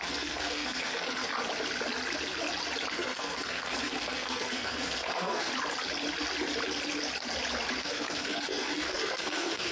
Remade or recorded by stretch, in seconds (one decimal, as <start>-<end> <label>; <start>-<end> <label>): 0.0-1.3 remade; 1.3-2.9 recorded; 2.9-5.5 remade; 5.5-7.8 recorded; 7.8-9.7 remade